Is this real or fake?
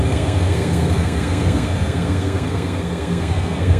fake